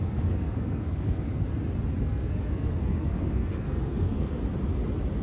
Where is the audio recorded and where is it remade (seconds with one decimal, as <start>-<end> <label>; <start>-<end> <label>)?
0.0-1.5 remade; 1.5-2.0 recorded; 2.0-4.4 remade; 4.4-5.2 recorded